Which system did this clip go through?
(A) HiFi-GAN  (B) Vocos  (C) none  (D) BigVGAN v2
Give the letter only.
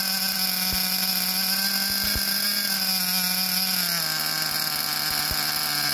C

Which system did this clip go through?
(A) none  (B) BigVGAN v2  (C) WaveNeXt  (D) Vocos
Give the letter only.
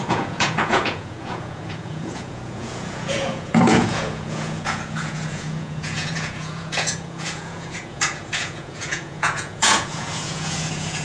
D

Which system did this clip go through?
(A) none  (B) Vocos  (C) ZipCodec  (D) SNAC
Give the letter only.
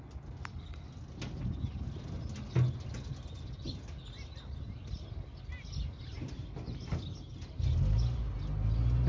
A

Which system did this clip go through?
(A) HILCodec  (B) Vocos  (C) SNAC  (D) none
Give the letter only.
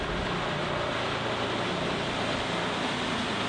D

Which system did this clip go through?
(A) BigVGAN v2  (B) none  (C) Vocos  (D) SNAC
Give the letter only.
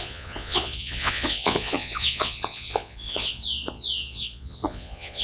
C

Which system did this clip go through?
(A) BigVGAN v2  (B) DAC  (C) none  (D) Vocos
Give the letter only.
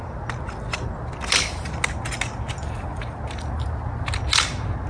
C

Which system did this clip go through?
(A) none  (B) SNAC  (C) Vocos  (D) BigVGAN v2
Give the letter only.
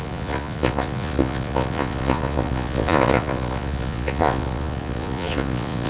C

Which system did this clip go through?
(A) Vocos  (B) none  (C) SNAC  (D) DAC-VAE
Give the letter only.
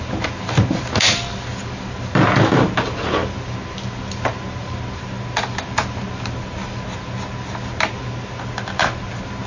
B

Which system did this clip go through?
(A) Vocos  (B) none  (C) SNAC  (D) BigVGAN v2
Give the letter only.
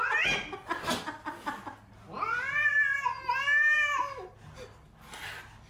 B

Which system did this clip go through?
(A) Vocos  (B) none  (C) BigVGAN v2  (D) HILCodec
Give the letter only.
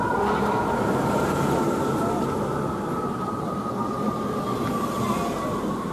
B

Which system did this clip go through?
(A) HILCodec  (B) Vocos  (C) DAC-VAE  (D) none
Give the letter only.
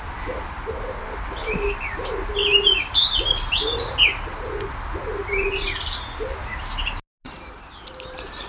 D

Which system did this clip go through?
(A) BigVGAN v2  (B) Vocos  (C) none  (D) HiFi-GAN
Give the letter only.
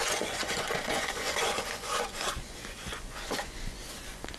B